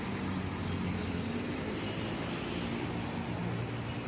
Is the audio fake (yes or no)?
no